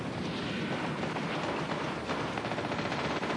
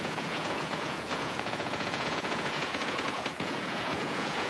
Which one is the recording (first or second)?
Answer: first